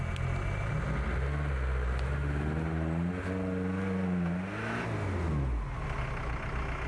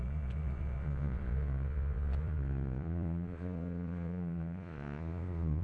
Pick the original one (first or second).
first